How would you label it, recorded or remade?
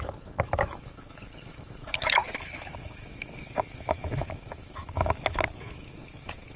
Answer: remade